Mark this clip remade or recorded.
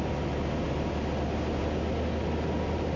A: recorded